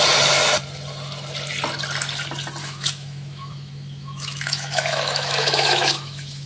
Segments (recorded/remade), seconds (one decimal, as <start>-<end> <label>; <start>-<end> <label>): 0.0-2.6 recorded; 2.6-6.5 remade